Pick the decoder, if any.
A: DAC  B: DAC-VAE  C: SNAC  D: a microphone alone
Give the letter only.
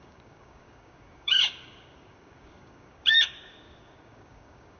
A